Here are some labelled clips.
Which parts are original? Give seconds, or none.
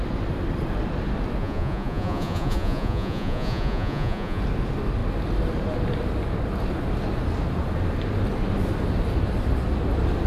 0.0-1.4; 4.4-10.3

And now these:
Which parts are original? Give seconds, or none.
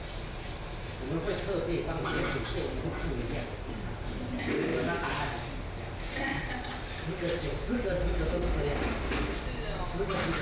0.0-10.4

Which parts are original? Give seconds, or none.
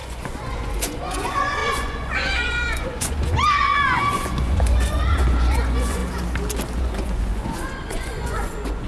6.0-6.8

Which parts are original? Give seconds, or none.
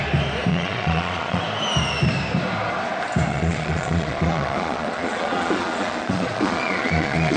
0.0-0.5; 1.4-3.3